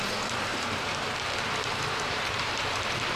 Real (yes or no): no